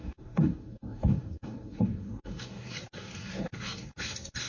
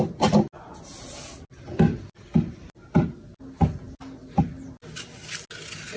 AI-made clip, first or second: first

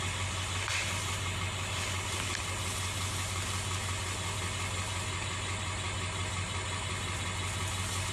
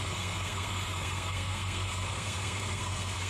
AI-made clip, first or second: second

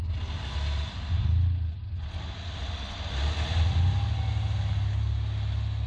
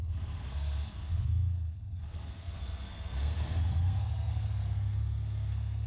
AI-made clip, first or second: second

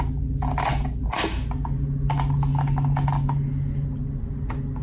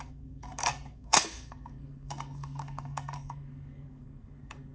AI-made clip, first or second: second